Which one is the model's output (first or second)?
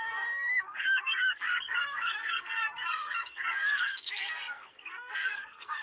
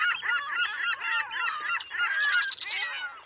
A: first